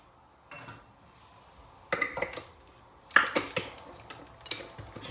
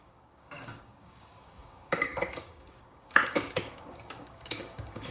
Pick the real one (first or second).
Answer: first